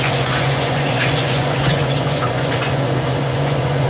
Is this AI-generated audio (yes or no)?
yes